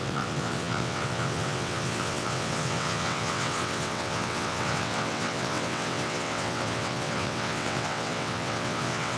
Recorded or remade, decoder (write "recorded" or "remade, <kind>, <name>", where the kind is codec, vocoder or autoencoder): remade, vocoder, WaveNeXt